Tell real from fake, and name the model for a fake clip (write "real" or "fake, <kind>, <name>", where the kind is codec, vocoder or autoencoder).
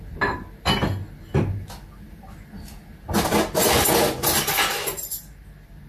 real